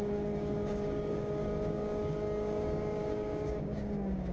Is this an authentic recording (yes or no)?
no